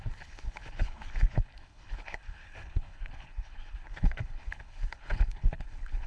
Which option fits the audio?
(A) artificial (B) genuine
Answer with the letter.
A